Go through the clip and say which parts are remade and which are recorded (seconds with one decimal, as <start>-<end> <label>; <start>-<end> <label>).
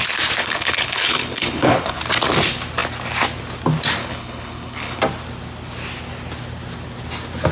0.0-0.4 recorded; 0.4-2.0 remade; 2.0-4.0 recorded; 4.0-5.0 remade; 5.0-7.5 recorded